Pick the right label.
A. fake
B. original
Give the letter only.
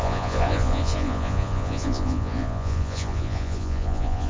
A